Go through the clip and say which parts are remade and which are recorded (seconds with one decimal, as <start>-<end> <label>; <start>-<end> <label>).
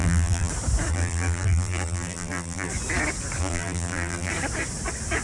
0.0-0.5 remade; 0.5-0.9 recorded; 0.9-2.7 remade; 2.7-3.4 recorded; 3.4-4.3 remade; 4.3-5.2 recorded